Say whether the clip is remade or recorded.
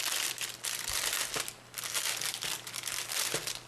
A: recorded